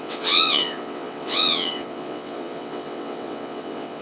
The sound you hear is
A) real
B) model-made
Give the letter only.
B